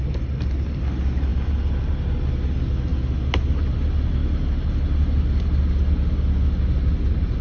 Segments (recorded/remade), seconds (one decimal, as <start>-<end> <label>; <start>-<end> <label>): 0.0-7.4 recorded